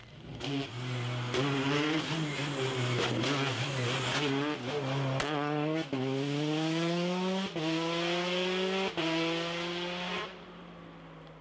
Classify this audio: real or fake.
real